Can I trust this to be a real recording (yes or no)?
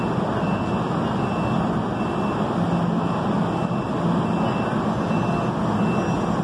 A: yes